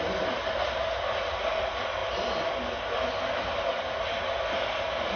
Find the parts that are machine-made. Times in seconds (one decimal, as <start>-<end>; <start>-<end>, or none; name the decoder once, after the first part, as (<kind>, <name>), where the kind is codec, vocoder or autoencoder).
none